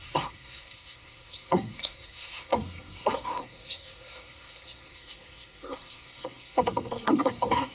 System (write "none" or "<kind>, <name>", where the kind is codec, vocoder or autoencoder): codec, SNAC